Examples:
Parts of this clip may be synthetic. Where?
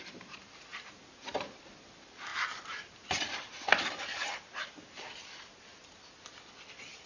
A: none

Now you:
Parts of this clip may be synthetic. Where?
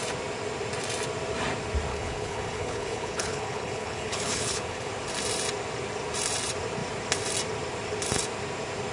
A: 1.9-4.9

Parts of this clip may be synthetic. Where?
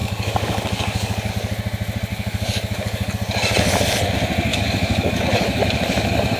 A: 0.0-1.3; 2.1-3.1; 4.5-5.6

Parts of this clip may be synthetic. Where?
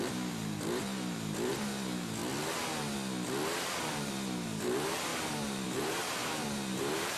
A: 0.0-2.2; 3.8-7.2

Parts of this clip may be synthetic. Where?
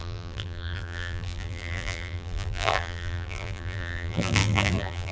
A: 0.0-5.1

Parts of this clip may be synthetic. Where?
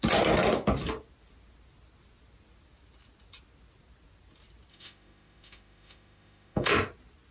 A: 4.7-6.7